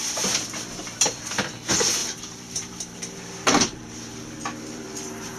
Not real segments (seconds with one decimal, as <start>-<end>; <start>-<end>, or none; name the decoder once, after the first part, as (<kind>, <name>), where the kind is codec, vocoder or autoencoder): 2.0-5.4 (vocoder, BigVGAN v2)